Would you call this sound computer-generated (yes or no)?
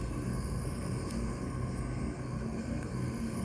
yes